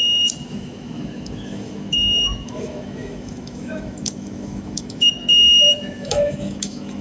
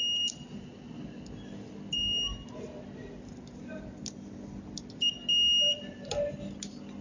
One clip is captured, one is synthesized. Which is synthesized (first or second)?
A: first